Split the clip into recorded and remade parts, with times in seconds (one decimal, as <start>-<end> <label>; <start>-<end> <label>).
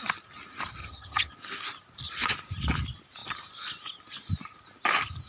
0.0-0.8 recorded; 0.8-1.3 remade; 1.3-5.3 recorded